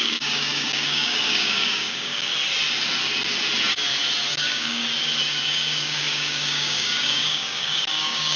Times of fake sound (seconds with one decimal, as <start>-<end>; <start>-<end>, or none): 0.0-2.3; 4.3-4.8; 5.4-8.4